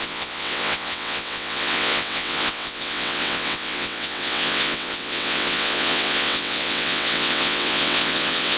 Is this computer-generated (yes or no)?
yes